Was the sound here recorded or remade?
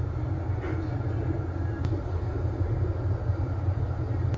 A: recorded